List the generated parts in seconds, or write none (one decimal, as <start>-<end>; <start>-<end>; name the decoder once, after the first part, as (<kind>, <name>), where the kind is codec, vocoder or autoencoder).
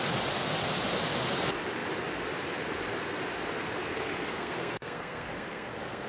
3.8-6.1 (codec, SNAC)